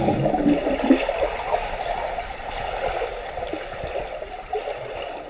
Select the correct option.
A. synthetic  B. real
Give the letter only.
B